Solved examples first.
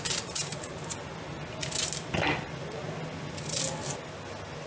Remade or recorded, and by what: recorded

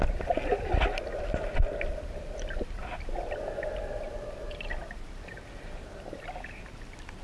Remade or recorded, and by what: recorded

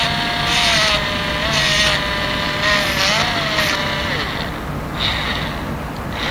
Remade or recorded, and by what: recorded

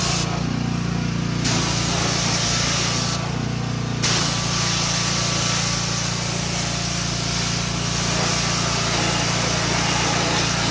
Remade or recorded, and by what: recorded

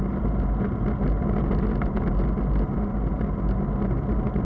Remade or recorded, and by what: recorded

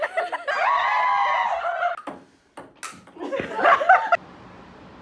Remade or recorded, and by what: recorded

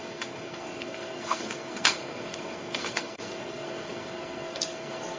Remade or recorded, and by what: remade, codec, SNAC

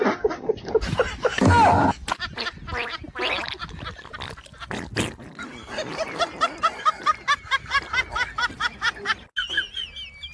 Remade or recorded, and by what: recorded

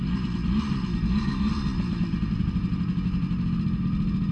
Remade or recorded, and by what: recorded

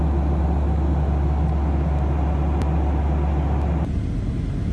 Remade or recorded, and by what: recorded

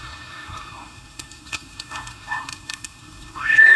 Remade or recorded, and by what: remade, codec, SNAC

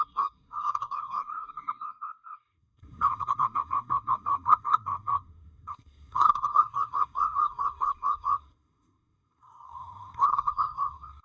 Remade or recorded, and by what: remade, codec, SNAC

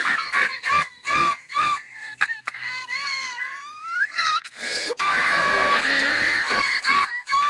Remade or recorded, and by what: remade, codec, SNAC